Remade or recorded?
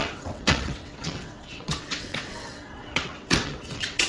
remade